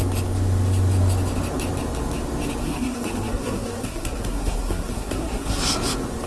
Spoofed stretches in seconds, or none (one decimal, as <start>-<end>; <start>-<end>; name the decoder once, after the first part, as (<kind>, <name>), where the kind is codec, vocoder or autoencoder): 2.6-5.6 (codec, SNAC)